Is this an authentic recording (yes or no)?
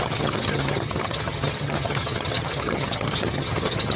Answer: no